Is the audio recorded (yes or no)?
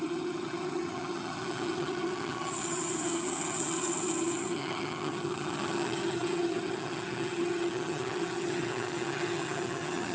no